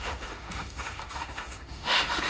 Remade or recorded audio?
remade